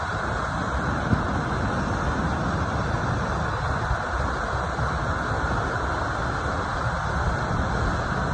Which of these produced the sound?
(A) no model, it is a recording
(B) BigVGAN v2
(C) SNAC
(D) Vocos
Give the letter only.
A